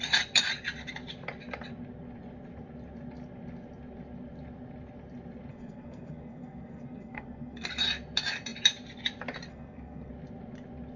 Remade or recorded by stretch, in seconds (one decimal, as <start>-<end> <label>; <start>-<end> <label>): 0.0-5.5 recorded; 5.5-7.7 remade; 7.7-9.5 recorded; 9.5-10.1 remade; 10.1-11.0 recorded